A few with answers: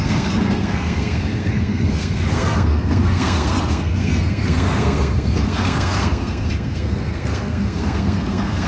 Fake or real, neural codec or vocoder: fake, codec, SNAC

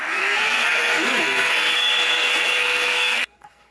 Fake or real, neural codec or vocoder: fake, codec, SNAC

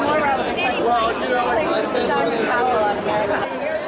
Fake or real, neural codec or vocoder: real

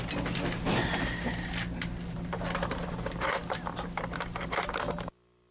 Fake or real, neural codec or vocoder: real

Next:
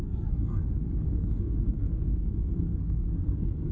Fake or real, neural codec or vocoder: fake, codec, SNAC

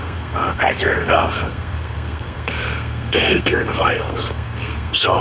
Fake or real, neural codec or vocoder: fake, codec, SNAC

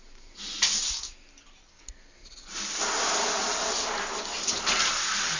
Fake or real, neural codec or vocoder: real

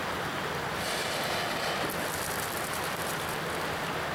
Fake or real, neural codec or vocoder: real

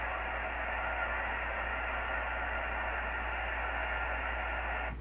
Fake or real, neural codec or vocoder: real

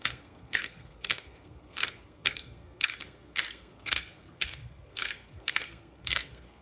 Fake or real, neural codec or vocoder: fake, codec, SNAC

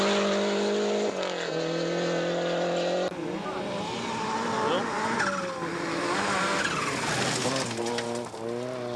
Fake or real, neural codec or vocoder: real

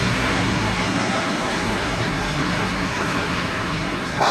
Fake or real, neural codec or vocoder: fake, codec, SNAC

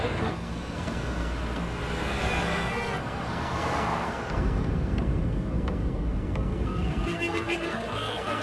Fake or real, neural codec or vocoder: fake, codec, SNAC